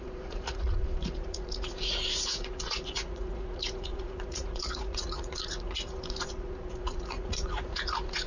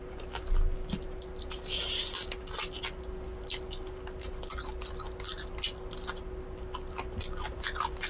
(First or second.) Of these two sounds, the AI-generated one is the first